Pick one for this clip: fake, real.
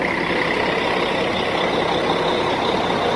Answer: real